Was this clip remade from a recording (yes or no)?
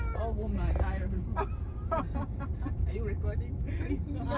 no